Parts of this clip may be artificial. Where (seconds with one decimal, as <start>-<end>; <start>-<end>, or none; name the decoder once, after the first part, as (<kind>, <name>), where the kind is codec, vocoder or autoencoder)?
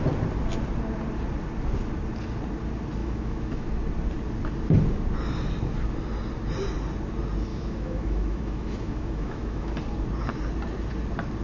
3.0-3.7 (autoencoder, DAC-VAE); 7.5-9.7